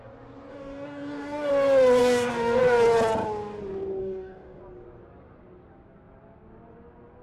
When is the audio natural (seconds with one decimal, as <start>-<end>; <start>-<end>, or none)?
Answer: 0.0-0.5; 1.5-2.0; 2.6-4.0; 4.6-7.2